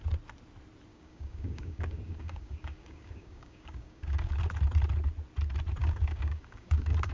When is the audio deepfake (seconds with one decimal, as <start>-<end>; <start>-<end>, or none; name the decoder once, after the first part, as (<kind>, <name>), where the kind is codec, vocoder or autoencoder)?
0.9-4.4 (codec, DAC); 5.8-7.1